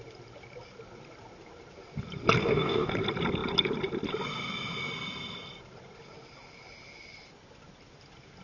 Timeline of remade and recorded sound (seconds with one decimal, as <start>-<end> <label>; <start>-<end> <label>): 0.0-2.4 recorded; 2.4-2.9 remade; 2.9-8.4 recorded